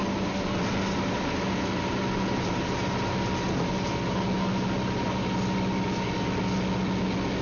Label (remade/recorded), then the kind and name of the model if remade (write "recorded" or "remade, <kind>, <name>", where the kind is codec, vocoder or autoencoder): recorded